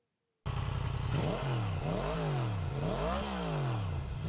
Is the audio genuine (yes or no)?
yes